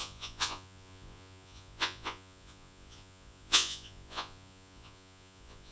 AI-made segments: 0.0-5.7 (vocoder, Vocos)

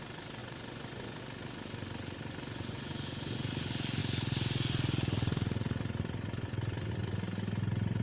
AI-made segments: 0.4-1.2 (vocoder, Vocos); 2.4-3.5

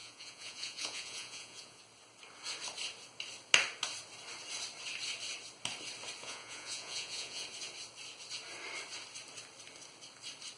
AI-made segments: 0.0-1.8 (vocoder, Vocos); 6.2-7.4

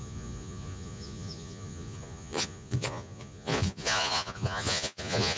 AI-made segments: 0.0-5.4 (vocoder, Vocos)

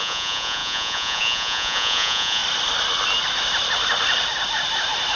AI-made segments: 0.0-2.4 (vocoder, Vocos)

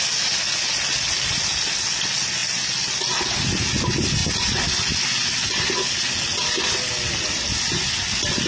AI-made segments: none

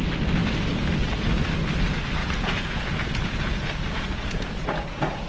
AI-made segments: 2.2-5.3 (vocoder, Vocos)